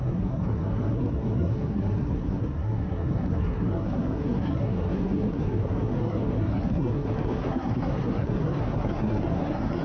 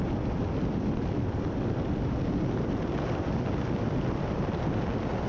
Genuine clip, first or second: second